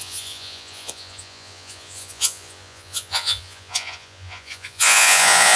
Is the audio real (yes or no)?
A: no